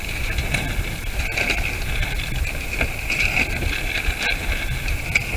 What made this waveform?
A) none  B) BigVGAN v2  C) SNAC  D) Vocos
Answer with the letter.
A